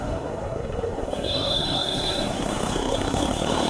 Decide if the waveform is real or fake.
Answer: fake